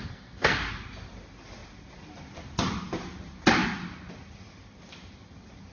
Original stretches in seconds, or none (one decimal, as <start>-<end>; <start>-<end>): 0.6-5.7